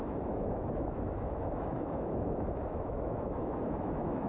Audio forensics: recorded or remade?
remade